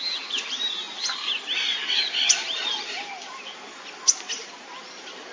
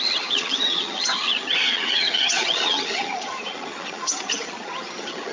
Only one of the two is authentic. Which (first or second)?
first